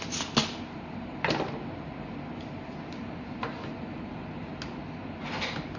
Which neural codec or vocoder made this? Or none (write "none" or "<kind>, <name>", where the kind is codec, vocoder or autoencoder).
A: none